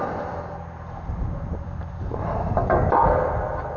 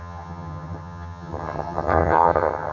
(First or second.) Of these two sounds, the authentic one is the first